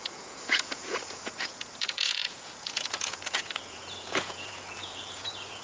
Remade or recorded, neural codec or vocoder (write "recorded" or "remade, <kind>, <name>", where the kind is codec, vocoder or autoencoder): remade, vocoder, Vocos